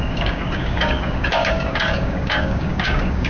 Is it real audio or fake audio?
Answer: fake